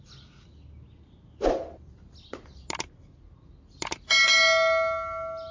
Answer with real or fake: real